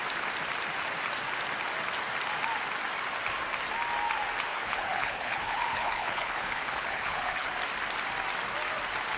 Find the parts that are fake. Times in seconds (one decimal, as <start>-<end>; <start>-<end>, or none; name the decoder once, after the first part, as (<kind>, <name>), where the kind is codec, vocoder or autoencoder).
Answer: 4.5-7.5 (codec, HILCodec)